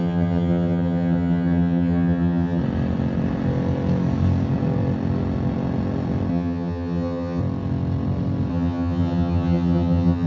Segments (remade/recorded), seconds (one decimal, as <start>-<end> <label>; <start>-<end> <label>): 0.0-2.6 remade; 2.6-6.3 recorded; 6.3-7.4 remade; 7.4-8.5 recorded; 8.5-10.3 remade